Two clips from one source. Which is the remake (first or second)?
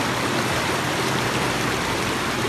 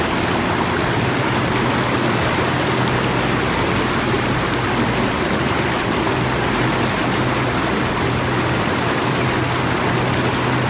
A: first